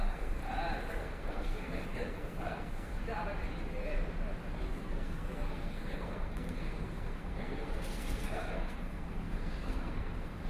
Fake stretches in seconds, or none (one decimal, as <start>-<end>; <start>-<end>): 0.0-0.4; 0.9-3.0; 4.7-10.5